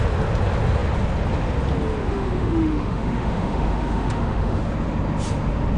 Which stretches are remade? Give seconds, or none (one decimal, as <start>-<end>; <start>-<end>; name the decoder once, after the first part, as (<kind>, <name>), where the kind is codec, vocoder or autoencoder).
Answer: 2.0-4.6 (autoencoder, DAC-VAE)